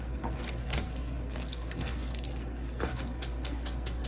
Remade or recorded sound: remade